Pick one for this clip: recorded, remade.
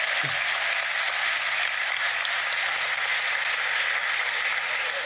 recorded